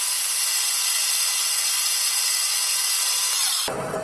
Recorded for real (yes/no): yes